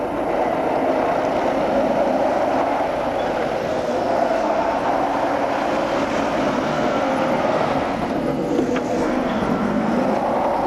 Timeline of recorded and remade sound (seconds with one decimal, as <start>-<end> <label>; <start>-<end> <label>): 0.0-3.6 recorded; 3.6-4.9 remade; 4.9-6.7 recorded; 6.7-9.9 remade; 9.9-10.7 recorded